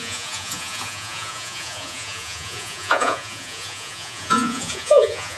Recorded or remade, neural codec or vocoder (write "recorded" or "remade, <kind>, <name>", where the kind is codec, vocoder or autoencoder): remade, vocoder, Vocos